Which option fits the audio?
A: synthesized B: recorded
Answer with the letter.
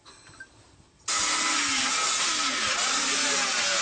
B